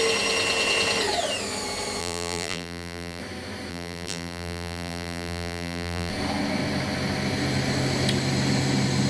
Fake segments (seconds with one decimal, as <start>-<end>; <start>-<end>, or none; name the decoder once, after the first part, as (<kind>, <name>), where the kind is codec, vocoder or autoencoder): 2.0-3.2 (vocoder, BigVGAN v2); 3.7-6.1